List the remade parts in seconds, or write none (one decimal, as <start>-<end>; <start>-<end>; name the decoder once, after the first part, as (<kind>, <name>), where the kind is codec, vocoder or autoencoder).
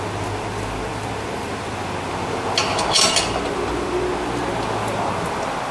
none